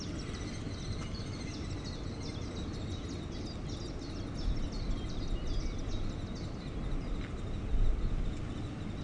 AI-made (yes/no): no